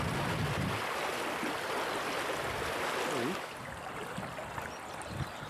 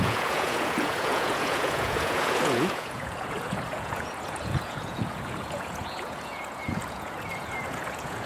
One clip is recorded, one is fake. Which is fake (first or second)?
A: second